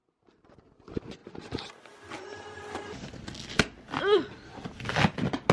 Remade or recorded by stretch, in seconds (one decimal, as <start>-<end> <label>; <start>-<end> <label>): 0.0-5.5 recorded